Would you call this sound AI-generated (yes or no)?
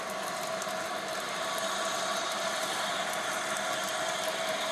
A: no